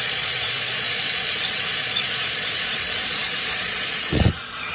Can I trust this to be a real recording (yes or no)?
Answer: no